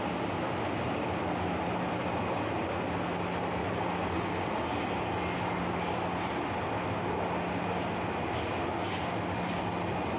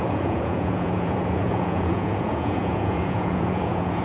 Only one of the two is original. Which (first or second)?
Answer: first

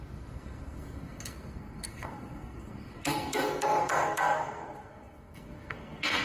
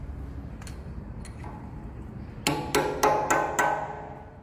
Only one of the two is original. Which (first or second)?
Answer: second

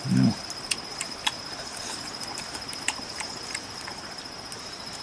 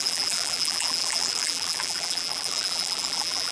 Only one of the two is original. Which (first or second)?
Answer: first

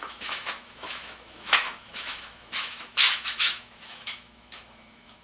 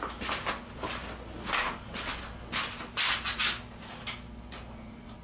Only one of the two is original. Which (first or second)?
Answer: second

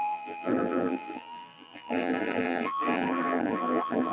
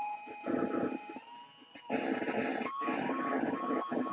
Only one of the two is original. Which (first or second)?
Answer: second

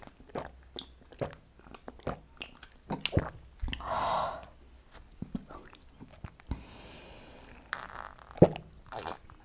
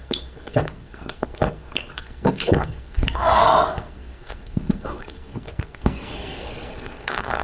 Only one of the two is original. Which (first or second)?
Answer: first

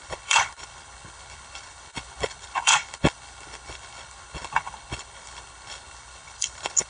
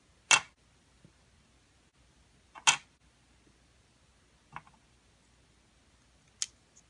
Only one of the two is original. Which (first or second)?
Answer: second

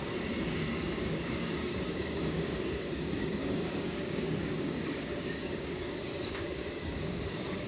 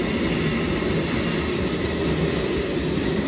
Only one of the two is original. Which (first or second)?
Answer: second